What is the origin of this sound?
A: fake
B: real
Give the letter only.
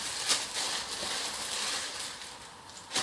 B